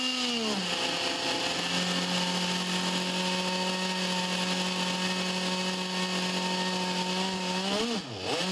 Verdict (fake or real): real